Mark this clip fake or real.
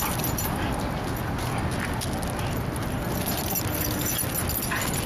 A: real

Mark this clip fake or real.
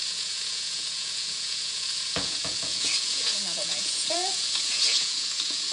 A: fake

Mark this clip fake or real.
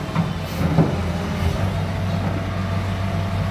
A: real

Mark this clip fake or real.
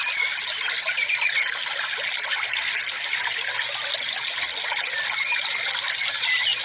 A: real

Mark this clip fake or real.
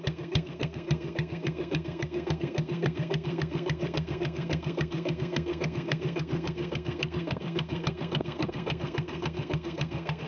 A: fake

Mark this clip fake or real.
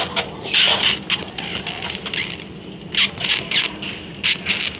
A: real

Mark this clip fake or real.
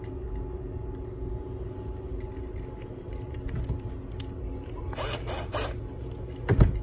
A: real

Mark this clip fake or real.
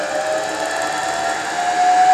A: real